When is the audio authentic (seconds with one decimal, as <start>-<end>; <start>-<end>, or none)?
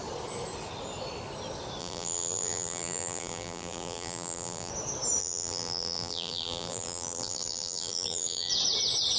0.0-1.8; 4.7-5.2; 8.5-9.2